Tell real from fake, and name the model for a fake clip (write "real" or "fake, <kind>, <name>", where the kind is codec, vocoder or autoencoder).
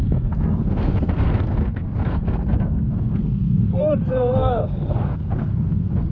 fake, codec, SNAC